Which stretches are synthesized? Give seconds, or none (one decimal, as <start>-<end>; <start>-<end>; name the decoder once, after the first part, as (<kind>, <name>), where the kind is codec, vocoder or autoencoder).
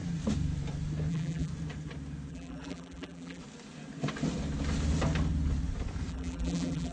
1.1-1.5 (vocoder, BigVGAN v2); 2.3-3.4; 6.1-6.9